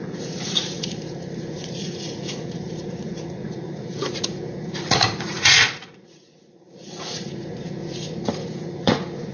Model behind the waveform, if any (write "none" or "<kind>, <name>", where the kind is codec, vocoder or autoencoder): vocoder, Vocos